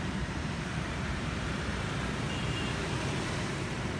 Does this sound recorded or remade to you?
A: remade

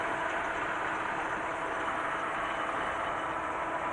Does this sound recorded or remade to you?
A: recorded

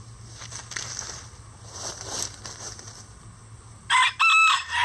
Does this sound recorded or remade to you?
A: recorded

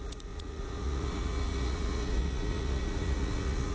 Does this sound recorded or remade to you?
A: remade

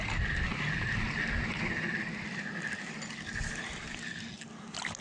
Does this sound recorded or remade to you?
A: recorded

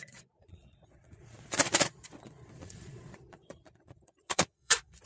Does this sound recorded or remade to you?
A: remade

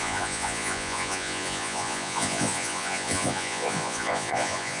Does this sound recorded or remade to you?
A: remade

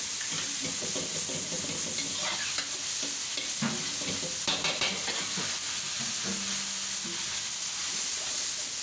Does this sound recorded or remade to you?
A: recorded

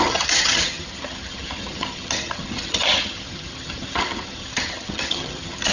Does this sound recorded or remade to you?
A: remade